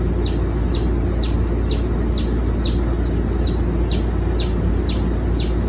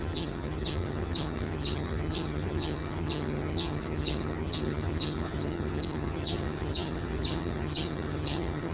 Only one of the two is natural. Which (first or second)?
first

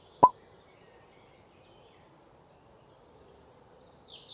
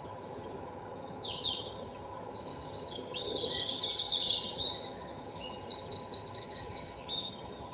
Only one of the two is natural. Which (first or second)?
first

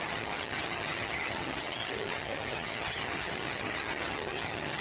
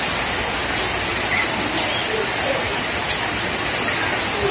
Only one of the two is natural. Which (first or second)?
second